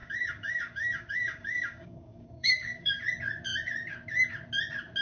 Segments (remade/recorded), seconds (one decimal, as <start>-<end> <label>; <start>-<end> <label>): 0.0-3.0 remade; 3.0-5.0 recorded